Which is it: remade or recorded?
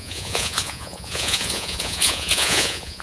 remade